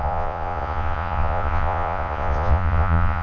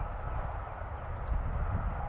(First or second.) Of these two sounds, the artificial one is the first